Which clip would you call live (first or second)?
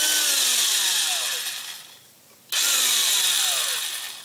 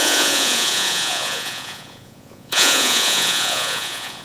first